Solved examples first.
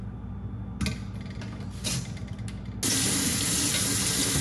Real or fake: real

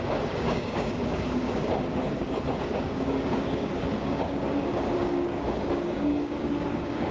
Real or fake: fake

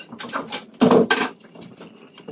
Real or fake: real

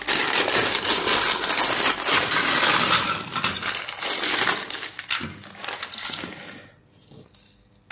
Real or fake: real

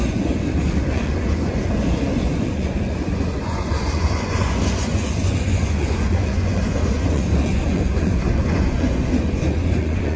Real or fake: fake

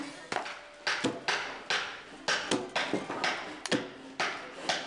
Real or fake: real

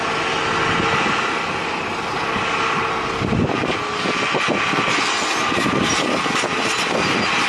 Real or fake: real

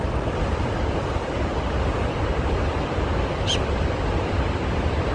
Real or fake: real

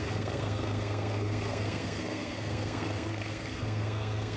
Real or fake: fake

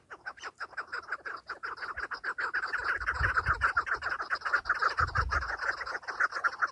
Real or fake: real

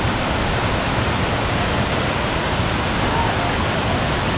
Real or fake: real